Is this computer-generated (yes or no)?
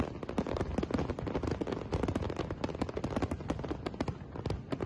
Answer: no